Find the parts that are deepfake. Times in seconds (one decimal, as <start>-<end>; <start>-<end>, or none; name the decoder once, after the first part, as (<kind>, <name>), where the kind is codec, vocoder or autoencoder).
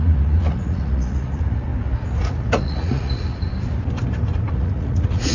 0.0-1.7 (vocoder, Vocos); 2.2-3.5; 4.5-5.3